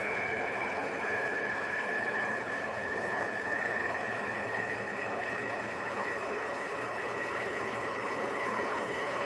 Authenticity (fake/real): fake